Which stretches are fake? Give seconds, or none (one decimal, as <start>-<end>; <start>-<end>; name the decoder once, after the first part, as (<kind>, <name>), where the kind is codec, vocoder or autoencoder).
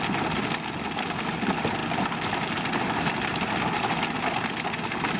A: none